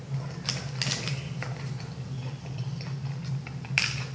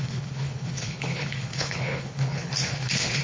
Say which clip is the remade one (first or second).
second